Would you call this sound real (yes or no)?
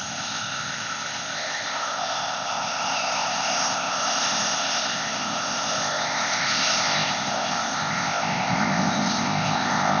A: no